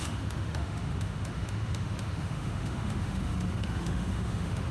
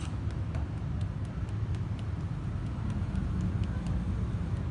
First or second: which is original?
second